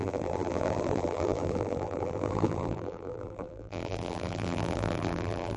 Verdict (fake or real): fake